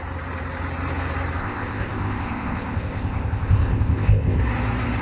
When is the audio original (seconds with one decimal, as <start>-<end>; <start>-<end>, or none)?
0.0-1.4; 4.4-5.0

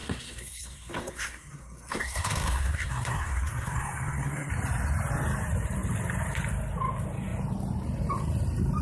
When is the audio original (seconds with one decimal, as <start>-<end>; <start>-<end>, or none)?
4.5-8.8

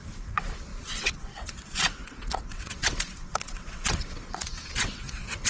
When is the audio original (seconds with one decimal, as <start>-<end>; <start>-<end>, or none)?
none

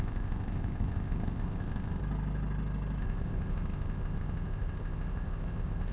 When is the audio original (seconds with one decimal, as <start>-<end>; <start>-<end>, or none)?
2.0-3.0